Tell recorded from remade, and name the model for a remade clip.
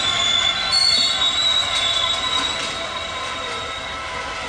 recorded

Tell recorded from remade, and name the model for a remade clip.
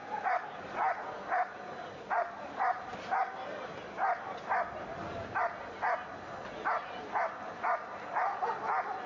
recorded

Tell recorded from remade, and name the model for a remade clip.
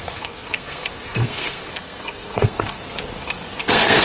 remade, codec, SNAC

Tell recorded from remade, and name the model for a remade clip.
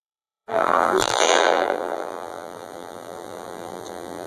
remade, vocoder, BigVGAN v2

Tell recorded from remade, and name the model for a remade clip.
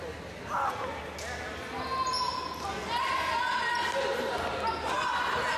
recorded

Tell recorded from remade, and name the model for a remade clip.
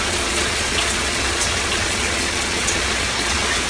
remade, vocoder, Vocos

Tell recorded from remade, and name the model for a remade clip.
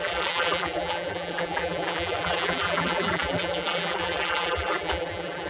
remade, vocoder, BigVGAN v2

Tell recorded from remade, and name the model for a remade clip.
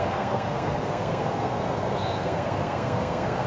remade, codec, SNAC